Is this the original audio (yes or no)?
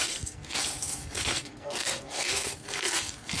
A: no